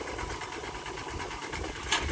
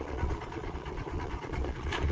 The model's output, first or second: second